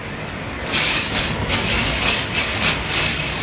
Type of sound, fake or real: fake